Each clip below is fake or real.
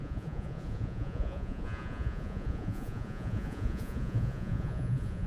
fake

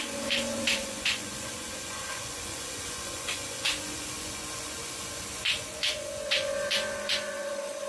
fake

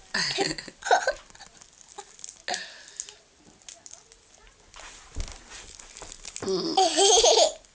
real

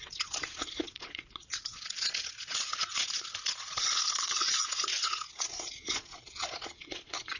fake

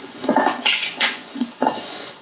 fake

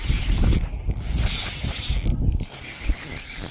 real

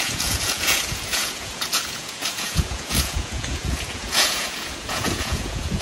fake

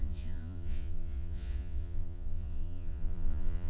fake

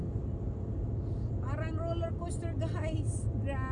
real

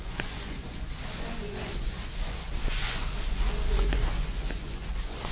fake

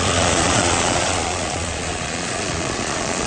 fake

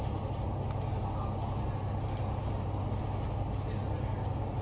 real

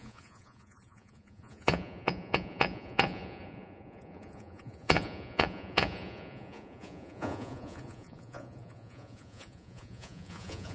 fake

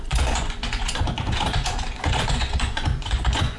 fake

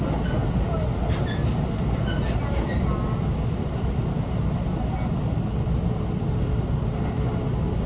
real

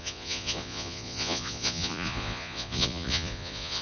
fake